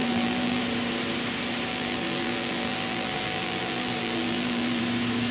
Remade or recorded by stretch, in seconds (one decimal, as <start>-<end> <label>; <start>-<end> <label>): 0.0-0.6 remade; 0.6-1.7 recorded; 1.7-4.8 remade; 4.8-5.3 recorded